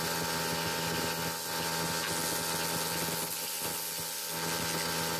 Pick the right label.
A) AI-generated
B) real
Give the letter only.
B